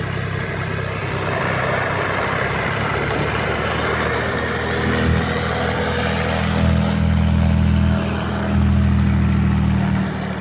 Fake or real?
real